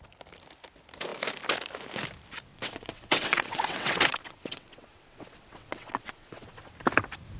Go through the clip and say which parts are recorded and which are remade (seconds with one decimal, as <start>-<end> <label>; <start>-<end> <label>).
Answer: 0.0-2.5 recorded; 2.5-6.7 remade; 6.7-7.4 recorded